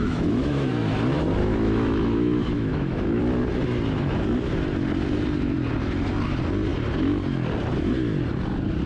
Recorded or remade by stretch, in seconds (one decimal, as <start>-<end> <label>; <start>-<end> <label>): 0.0-0.7 remade; 0.7-1.4 recorded; 1.4-3.2 remade; 3.2-8.9 recorded